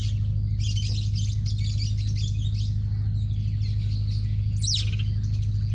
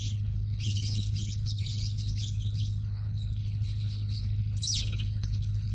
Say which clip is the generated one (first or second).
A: second